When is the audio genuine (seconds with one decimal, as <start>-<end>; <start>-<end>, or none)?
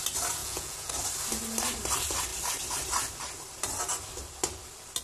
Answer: 0.0-0.4; 0.9-5.0